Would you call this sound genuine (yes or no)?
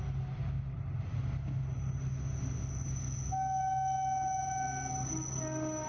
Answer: yes